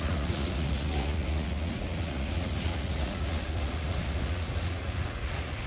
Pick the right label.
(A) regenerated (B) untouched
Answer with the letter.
A